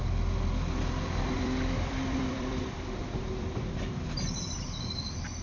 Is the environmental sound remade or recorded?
remade